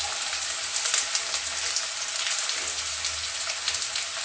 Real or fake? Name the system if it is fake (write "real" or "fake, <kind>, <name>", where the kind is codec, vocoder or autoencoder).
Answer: real